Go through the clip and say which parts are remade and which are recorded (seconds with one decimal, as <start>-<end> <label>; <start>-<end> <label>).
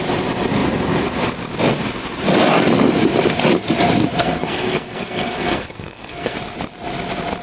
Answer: 0.0-4.2 recorded; 4.2-6.4 remade; 6.4-7.4 recorded